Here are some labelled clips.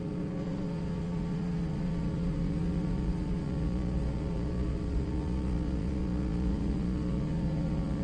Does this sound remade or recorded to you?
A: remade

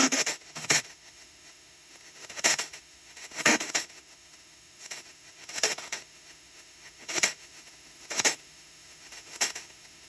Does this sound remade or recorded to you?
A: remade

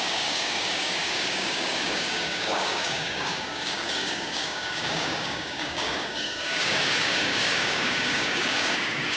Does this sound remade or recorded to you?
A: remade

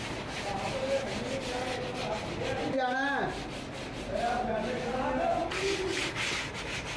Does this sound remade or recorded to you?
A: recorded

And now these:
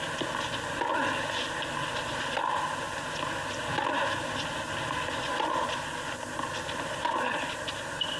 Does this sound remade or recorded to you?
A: recorded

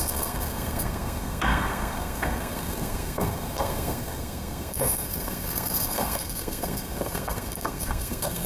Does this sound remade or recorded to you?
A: remade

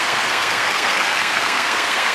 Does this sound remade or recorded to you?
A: remade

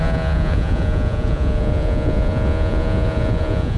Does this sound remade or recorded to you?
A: remade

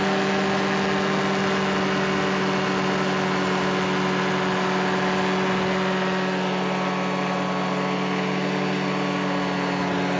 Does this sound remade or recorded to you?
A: recorded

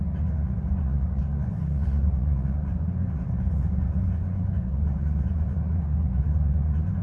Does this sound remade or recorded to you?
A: remade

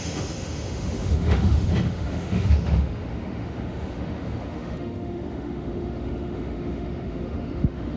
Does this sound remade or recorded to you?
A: remade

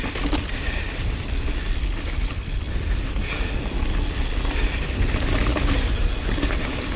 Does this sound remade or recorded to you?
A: recorded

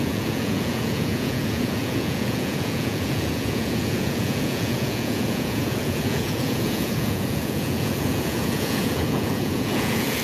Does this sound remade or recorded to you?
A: remade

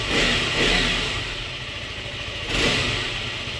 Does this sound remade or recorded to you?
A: recorded